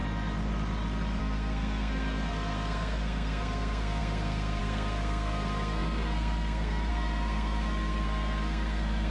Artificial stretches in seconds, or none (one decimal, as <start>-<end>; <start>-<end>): 1.2-9.1